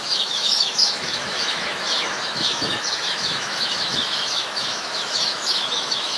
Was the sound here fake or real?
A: fake